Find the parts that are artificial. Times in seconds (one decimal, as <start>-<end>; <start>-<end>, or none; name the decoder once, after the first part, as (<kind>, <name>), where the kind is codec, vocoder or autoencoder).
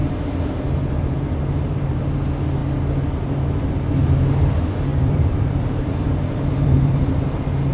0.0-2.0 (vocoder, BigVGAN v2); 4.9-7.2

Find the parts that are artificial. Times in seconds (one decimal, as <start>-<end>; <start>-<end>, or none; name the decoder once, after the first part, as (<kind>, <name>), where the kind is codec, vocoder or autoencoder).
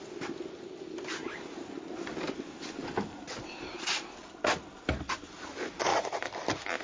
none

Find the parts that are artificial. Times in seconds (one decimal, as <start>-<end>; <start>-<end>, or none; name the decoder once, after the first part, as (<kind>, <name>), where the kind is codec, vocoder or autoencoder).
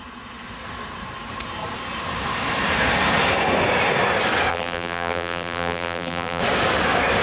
4.5-6.4 (vocoder, BigVGAN v2)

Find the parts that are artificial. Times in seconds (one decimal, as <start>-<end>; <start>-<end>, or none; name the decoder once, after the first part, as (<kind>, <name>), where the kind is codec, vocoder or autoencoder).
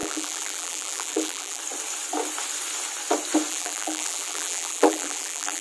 0.0-1.6 (vocoder, BigVGAN v2); 3.5-5.6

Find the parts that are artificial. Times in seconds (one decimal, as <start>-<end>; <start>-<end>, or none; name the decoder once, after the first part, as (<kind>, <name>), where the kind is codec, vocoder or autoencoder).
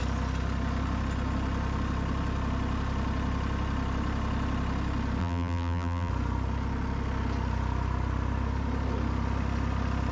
5.2-6.1 (vocoder, BigVGAN v2)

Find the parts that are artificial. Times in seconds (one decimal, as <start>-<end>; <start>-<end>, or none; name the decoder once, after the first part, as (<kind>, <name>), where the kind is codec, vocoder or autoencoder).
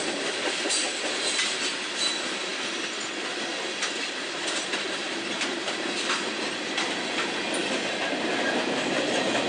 none